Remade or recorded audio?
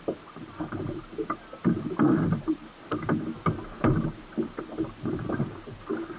remade